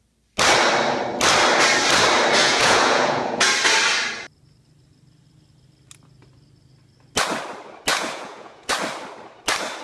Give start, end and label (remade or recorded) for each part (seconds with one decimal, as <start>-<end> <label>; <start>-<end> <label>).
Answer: 0.0-2.4 recorded; 2.4-3.5 remade; 3.5-7.9 recorded; 7.9-8.7 remade; 8.7-9.8 recorded